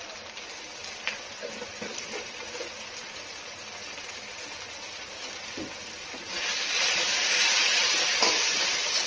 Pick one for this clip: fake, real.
real